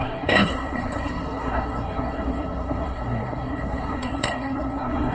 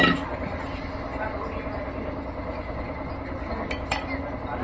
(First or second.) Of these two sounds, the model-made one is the first